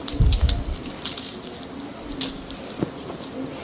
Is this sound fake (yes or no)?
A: no